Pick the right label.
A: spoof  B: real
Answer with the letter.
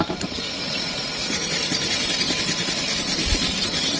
A